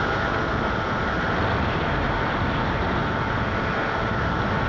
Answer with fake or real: real